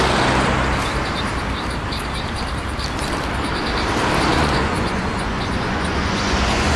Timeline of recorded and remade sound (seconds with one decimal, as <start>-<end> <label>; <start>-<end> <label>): 0.0-4.3 recorded; 4.3-6.8 remade